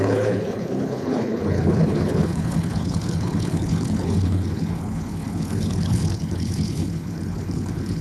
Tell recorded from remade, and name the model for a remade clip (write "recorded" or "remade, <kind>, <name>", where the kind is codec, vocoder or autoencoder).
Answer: remade, codec, HILCodec